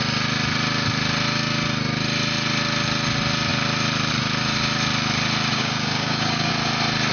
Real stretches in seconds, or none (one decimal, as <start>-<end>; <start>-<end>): 0.0-5.5; 6.5-7.1